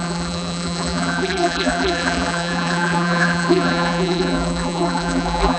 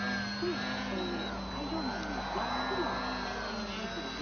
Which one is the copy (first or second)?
first